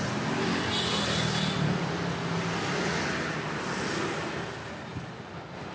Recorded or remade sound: recorded